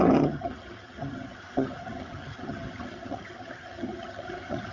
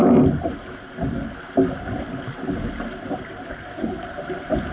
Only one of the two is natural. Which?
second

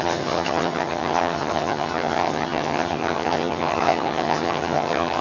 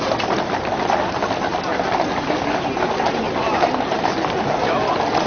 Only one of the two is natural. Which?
second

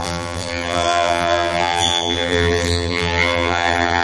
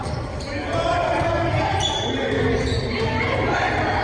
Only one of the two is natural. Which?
second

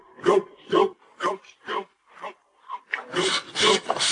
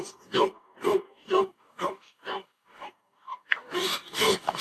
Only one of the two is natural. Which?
first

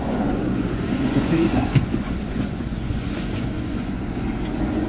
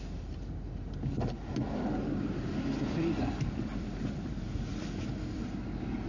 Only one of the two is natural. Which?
second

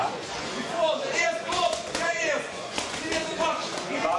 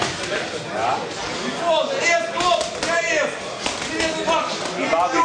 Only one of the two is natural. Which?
second